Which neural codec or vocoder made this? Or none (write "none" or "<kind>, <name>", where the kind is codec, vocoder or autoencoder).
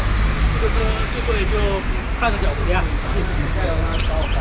none